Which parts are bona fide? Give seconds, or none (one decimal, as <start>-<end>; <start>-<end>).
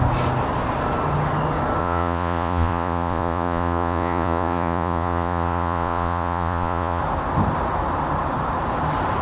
0.0-1.8; 7.0-9.2